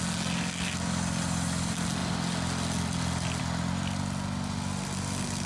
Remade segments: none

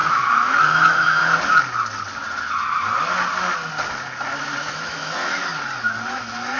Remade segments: 0.0-1.2 (autoencoder, DAC-VAE); 4.6-5.5; 6.1-6.6

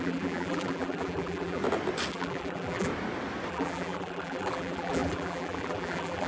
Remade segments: 0.0-1.6 (vocoder, BigVGAN v2); 2.1-2.9; 3.5-6.3

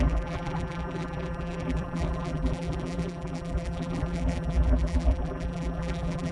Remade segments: 0.0-6.3 (vocoder, BigVGAN v2)

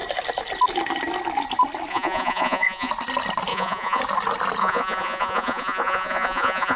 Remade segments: 1.9-2.9 (vocoder, Vocos); 3.5-4.0; 4.6-6.8

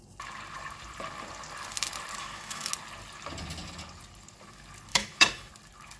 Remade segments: 2.2-2.7 (autoencoder, DAC-VAE); 4.9-5.5